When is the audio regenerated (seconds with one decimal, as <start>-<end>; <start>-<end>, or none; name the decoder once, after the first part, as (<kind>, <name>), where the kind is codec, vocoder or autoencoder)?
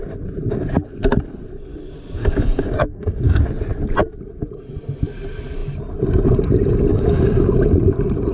2.2-3.4 (codec, DAC); 6.9-7.5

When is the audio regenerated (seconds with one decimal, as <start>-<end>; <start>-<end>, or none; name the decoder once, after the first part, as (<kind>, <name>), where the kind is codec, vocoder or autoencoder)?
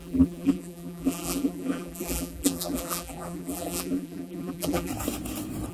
0.0-4.9 (vocoder, BigVGAN v2)